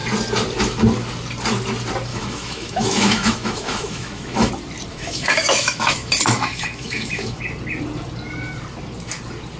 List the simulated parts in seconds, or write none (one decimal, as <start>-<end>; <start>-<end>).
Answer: 2.1-4.5; 4.9-7.4